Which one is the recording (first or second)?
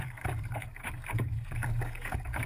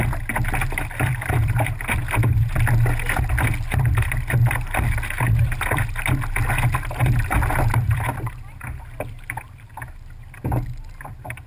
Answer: second